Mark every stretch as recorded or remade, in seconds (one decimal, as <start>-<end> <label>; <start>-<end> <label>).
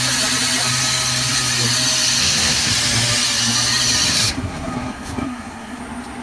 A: 0.0-2.2 recorded; 2.2-2.7 remade; 2.7-4.1 recorded; 4.1-5.8 remade; 5.8-6.2 recorded